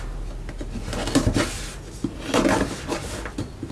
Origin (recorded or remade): recorded